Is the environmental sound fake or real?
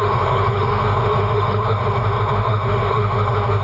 fake